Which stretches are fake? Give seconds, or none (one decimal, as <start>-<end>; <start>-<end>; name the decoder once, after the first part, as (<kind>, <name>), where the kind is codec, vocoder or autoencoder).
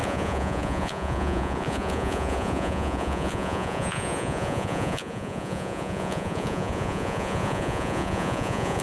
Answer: 0.0-8.8 (vocoder, Vocos)